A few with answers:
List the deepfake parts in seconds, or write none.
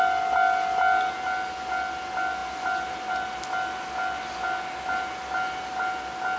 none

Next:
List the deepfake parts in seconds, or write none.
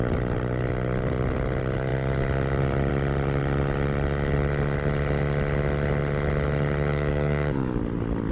6.9-7.8 (codec, DAC)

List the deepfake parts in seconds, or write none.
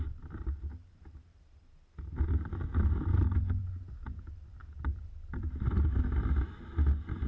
none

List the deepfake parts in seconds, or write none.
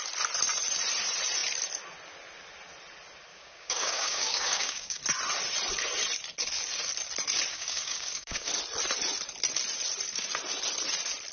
3.3-5.0 (codec, DAC); 7.5-8.5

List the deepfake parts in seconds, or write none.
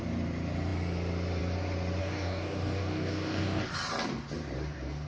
2.0-3.6 (codec, DAC)